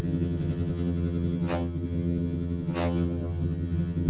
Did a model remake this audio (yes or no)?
yes